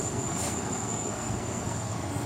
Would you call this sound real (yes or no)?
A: no